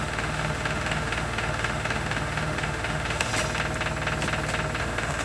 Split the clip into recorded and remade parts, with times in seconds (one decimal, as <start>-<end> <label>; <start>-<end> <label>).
0.0-3.3 remade; 3.3-4.8 recorded; 4.8-5.2 remade